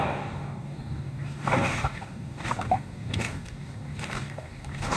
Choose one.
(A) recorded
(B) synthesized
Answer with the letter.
B